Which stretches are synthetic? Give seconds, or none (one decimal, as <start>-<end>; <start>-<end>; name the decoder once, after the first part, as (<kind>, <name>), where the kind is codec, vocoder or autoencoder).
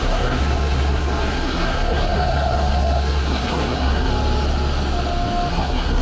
0.0-4.1 (codec, SNAC); 5.5-6.0